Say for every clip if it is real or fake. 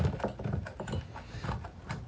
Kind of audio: real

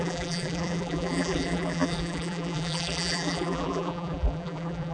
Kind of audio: fake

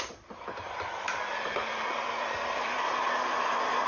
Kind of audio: fake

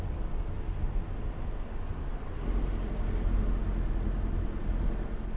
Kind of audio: real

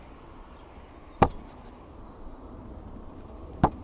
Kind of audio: real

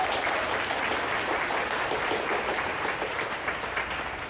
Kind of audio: real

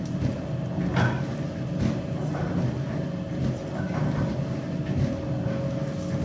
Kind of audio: real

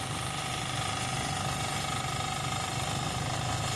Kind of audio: real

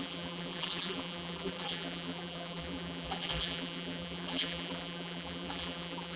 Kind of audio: fake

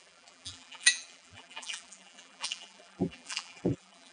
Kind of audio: fake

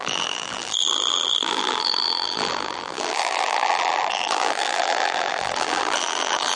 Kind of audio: fake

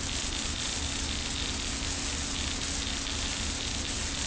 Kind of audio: real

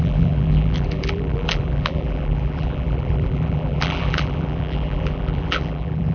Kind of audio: fake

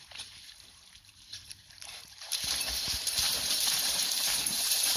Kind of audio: fake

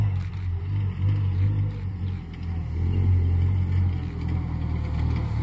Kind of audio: real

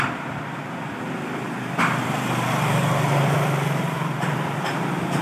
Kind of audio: fake